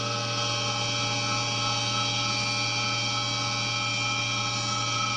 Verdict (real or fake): real